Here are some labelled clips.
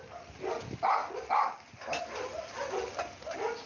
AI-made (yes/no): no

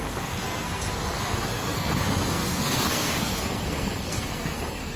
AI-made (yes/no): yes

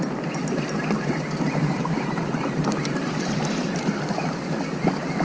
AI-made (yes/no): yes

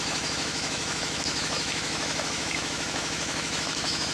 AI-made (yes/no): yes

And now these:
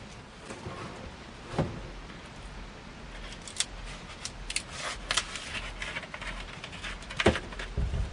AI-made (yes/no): no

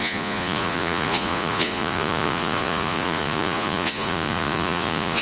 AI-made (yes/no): yes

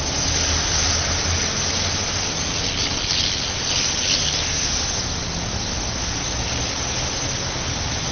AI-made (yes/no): no